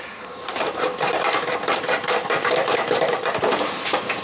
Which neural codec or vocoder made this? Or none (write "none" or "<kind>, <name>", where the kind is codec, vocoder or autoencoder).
vocoder, BigVGAN v2